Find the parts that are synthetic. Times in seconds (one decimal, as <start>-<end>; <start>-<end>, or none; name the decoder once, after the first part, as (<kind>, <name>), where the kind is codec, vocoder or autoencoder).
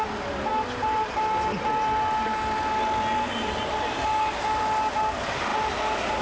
none